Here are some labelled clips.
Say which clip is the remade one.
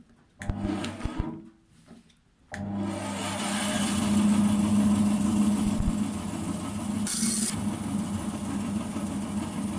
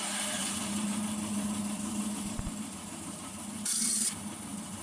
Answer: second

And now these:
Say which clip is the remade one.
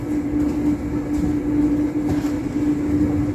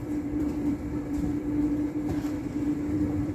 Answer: second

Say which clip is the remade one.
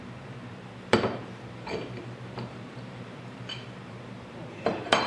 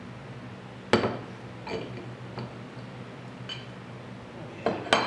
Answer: first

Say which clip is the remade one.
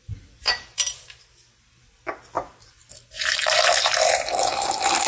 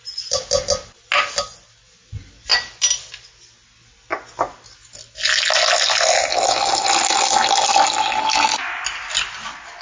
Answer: first